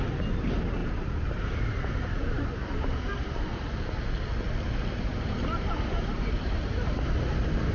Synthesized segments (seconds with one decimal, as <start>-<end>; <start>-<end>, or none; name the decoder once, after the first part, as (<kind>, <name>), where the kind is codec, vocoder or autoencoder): 0.8-2.3 (vocoder, BigVGAN v2); 5.1-7.1